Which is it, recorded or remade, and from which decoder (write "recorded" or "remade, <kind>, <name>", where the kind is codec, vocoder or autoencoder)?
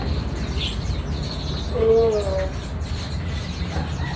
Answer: recorded